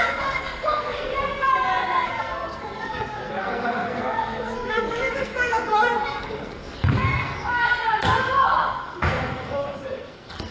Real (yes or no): no